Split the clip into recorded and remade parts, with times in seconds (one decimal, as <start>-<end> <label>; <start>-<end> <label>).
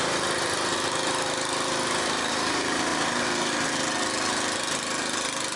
0.0-5.6 recorded